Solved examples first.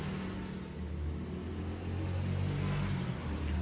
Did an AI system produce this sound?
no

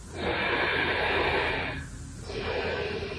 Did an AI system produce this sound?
no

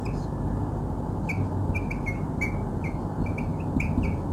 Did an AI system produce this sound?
no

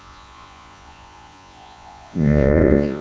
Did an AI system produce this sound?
yes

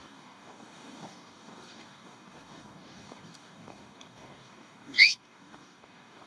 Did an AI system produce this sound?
yes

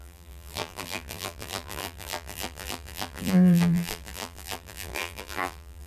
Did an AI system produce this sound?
yes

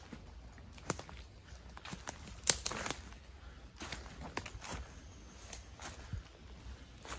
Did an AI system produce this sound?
no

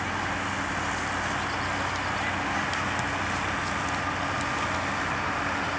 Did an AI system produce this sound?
no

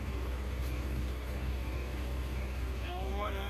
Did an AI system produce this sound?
yes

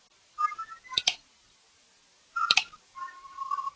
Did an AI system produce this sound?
no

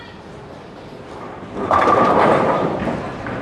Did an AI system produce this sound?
no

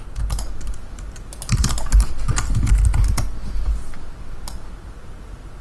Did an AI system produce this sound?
no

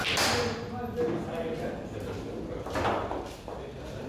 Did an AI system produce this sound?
no